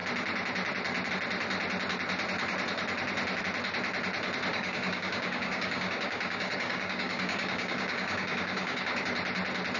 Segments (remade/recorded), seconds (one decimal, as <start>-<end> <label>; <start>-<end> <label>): 0.0-4.5 recorded; 4.5-9.0 remade; 9.0-9.8 recorded